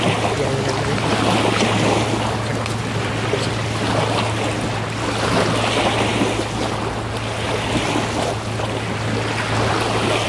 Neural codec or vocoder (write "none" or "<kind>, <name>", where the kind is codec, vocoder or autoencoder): none